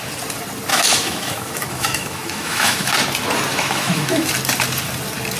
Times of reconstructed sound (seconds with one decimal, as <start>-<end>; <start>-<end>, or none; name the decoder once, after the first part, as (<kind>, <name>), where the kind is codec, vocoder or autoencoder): 0.7-2.9 (autoencoder, DAC-VAE); 3.5-4.3